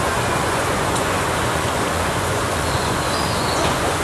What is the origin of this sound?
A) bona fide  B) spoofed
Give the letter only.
B